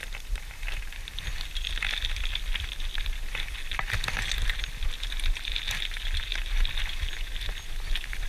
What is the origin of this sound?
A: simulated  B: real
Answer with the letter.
B